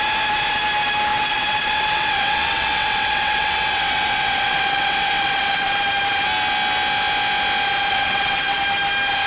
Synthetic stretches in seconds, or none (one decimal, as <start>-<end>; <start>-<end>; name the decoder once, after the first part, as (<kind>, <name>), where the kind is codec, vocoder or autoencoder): 1.1-5.7 (vocoder, WaveNeXt); 7.9-8.6